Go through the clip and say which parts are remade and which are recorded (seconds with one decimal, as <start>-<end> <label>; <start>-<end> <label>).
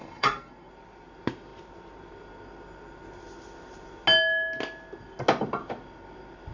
0.0-0.7 remade; 0.7-6.5 recorded